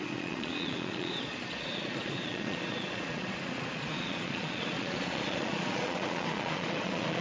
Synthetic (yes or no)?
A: yes